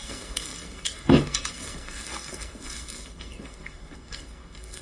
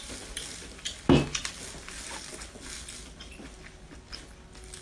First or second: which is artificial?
first